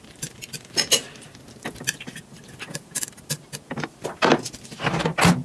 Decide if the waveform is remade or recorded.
recorded